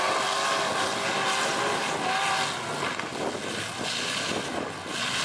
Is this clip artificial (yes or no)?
no